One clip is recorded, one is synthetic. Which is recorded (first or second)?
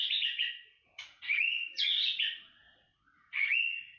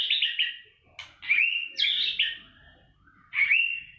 second